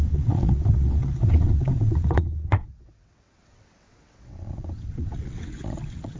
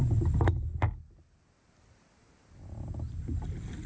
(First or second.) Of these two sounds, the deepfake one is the first